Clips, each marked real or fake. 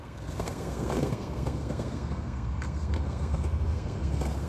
fake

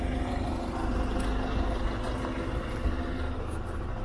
real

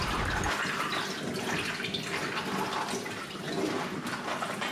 real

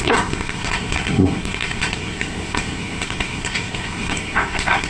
fake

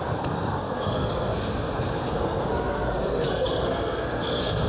fake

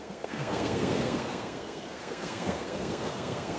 fake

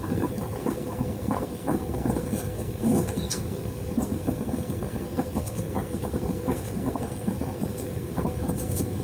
fake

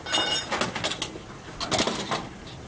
real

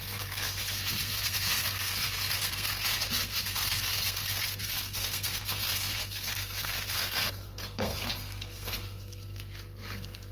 fake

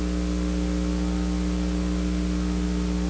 real